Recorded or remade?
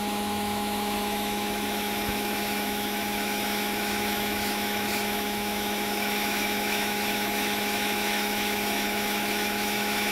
remade